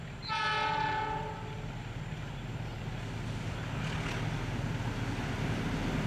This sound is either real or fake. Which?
real